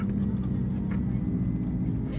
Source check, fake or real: real